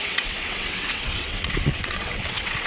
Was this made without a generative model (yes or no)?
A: no